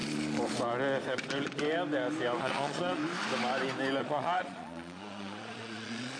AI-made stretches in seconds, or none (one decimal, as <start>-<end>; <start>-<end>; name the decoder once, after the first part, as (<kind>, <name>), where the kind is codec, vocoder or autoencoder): 2.4-3.0 (vocoder, Vocos); 4.0-6.2